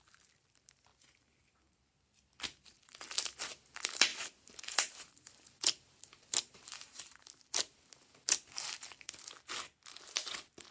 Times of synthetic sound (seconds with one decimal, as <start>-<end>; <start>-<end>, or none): 4.1-7.2